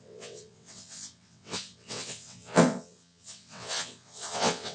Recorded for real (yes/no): no